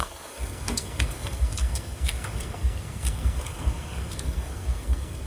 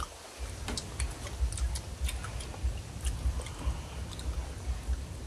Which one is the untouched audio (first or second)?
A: second